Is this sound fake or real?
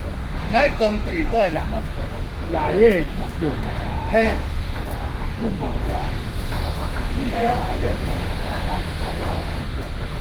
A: fake